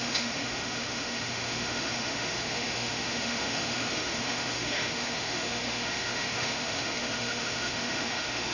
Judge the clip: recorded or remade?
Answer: remade